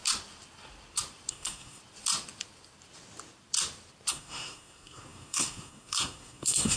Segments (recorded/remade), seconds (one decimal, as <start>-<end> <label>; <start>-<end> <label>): 0.0-1.3 recorded; 1.3-1.8 remade; 1.8-4.1 recorded; 4.1-6.8 remade